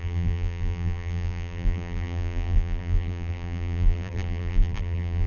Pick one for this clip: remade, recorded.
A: remade